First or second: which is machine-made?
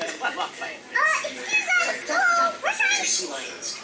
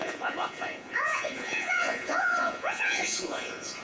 second